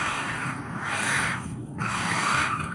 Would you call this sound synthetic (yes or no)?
yes